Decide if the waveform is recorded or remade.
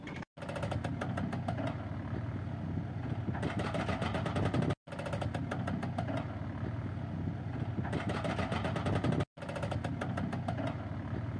recorded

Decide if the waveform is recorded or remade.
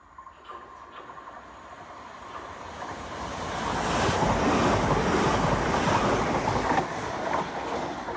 recorded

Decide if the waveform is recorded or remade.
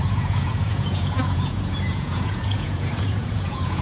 remade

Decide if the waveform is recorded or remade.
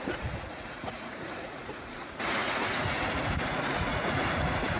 remade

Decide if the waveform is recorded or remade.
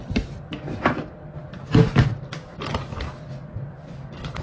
recorded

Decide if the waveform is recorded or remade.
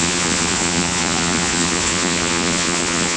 remade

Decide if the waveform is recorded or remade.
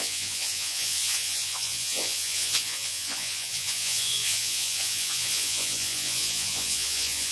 remade